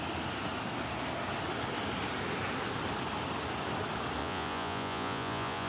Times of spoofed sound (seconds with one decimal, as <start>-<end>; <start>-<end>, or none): 4.2-5.7